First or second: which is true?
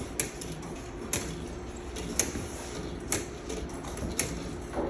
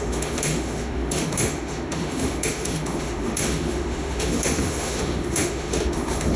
first